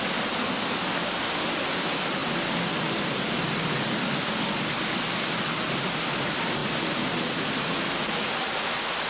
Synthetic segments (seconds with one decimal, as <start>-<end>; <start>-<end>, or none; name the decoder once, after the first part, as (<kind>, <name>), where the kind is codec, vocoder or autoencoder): none